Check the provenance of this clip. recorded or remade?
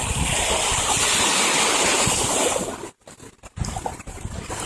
recorded